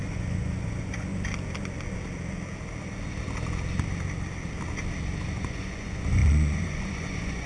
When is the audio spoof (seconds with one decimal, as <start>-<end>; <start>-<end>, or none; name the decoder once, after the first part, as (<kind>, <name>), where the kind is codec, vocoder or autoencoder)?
0.0-1.1 (vocoder, Vocos); 5.2-7.5